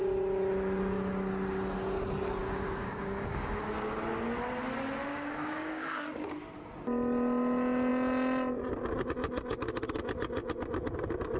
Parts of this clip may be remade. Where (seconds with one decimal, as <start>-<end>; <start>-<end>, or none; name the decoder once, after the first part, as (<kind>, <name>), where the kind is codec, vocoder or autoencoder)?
2.4-3.6 (codec, DAC); 5.1-6.3